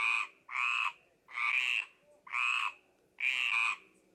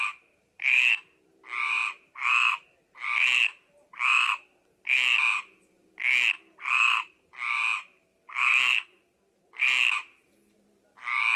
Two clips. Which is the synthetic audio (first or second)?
second